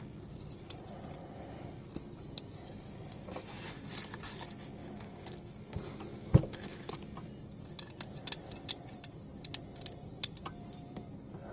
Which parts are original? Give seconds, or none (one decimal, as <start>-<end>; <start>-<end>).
0.0-4.8; 5.6-6.1; 6.9-11.5